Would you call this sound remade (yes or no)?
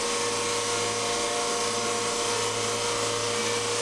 no